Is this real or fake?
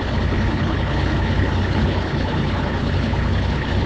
fake